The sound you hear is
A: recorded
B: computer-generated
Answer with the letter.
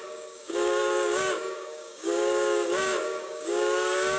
B